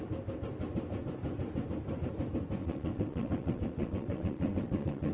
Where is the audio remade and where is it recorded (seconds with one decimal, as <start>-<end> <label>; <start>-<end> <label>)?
0.0-2.6 recorded; 2.6-5.1 remade